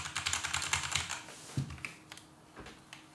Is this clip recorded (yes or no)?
yes